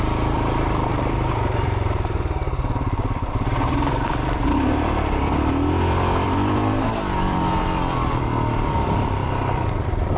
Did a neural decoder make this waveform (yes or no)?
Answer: yes